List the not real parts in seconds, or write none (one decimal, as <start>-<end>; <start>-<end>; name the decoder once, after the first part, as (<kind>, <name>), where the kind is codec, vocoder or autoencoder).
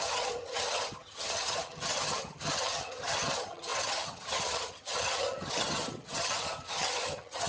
0.0-7.5 (vocoder, HiFi-GAN)